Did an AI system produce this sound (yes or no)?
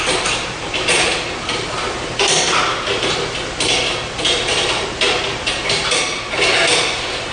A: yes